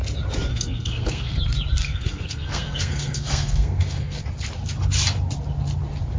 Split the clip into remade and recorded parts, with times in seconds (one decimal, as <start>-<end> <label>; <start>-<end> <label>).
0.0-0.5 recorded; 0.5-1.4 remade; 1.4-1.8 recorded; 1.8-4.2 remade; 4.2-6.2 recorded

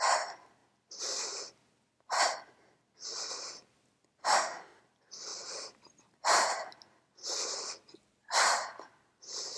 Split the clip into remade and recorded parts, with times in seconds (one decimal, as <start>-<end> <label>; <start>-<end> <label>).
0.0-4.2 recorded; 4.2-4.8 remade; 4.8-9.6 recorded

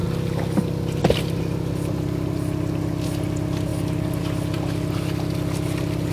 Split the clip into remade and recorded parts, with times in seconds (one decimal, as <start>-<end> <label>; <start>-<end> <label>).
0.0-6.1 recorded